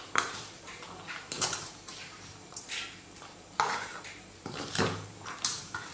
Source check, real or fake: fake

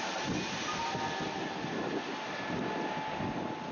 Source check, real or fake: real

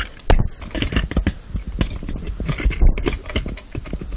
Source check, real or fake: real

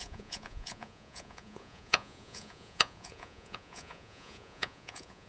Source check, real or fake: fake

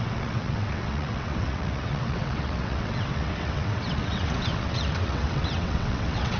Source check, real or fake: fake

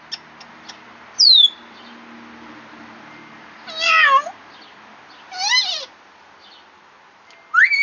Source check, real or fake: real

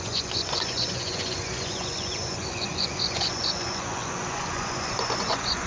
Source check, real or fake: fake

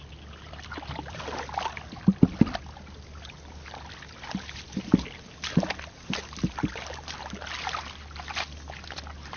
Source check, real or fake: real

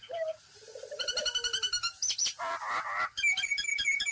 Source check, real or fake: real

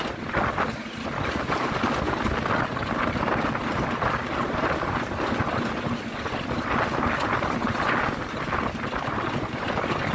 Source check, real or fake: real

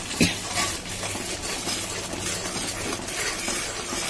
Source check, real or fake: real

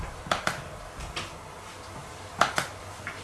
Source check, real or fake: fake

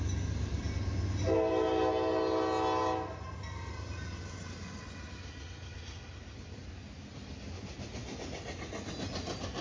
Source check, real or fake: real